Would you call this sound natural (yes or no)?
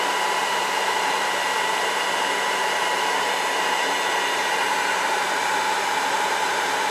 no